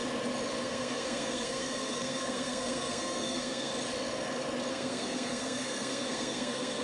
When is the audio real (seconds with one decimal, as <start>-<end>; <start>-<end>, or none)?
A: 0.0-0.6; 3.7-4.7